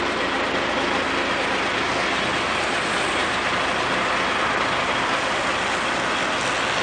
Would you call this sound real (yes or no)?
yes